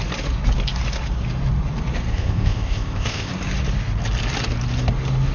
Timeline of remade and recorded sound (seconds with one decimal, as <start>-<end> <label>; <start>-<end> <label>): 0.0-2.1 recorded; 2.1-3.3 remade; 3.3-5.3 recorded